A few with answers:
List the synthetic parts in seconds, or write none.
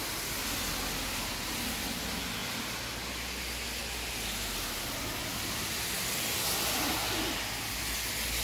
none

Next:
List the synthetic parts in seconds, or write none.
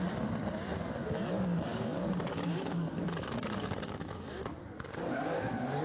1.7-5.2 (codec, DAC)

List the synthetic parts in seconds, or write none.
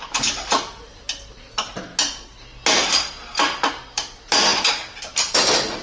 0.0-1.9 (vocoder, BigVGAN v2); 2.8-4.5; 5.0-5.8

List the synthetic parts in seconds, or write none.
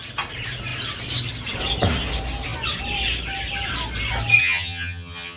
4.4-5.4 (vocoder, HiFi-GAN)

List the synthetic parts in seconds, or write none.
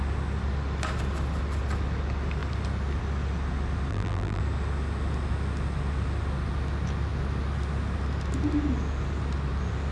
3.9-4.4 (vocoder, BigVGAN v2)